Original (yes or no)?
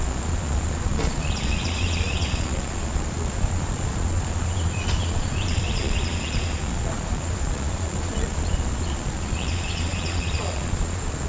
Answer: no